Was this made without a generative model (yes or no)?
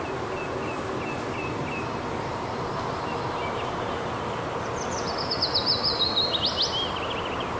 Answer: yes